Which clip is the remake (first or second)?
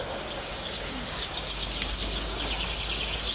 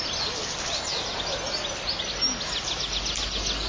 first